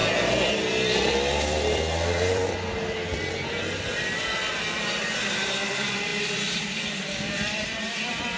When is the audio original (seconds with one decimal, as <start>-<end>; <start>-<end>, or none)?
2.4-4.2